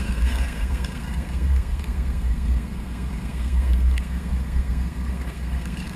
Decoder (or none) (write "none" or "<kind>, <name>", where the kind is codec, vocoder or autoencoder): codec, SNAC